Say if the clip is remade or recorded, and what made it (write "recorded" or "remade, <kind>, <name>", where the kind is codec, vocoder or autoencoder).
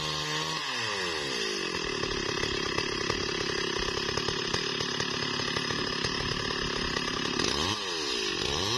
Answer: recorded